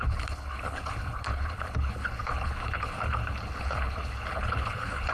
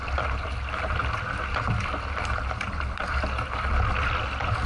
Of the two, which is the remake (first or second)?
first